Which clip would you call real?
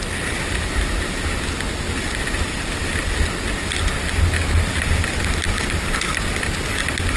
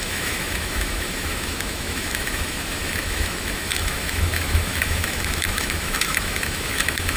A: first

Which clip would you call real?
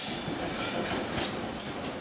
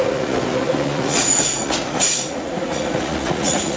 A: first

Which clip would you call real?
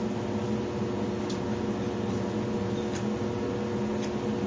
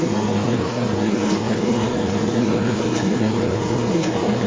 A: first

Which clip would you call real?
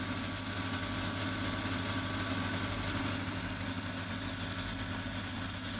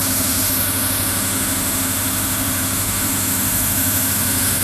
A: first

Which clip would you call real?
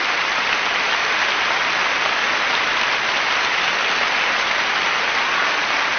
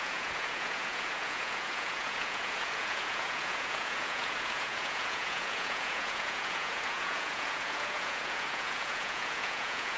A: first